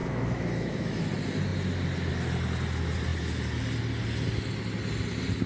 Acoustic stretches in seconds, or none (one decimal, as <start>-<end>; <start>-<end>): 1.0-5.5